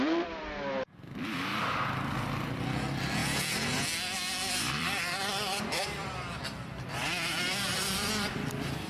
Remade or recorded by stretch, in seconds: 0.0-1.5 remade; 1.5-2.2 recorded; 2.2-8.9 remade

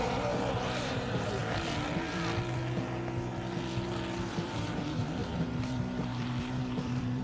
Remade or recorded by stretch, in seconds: 0.0-1.4 remade; 1.4-4.3 recorded; 4.3-7.2 remade

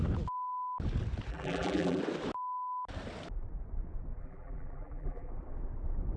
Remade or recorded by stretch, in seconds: 0.0-1.3 recorded; 1.3-2.0 remade; 2.0-4.2 recorded; 4.2-5.3 remade; 5.3-6.2 recorded

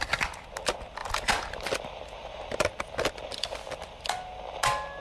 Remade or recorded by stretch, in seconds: 0.0-1.0 recorded; 1.0-4.0 remade; 4.0-5.0 recorded

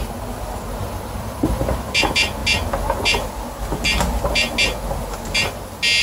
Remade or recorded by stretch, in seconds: 0.0-0.8 recorded; 0.8-1.6 remade; 1.6-6.0 recorded

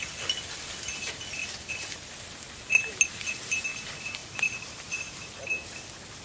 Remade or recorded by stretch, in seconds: 0.0-4.2 recorded; 4.2-5.3 remade; 5.3-6.2 recorded

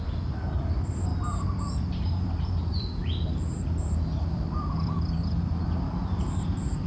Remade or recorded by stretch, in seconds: 0.0-6.9 remade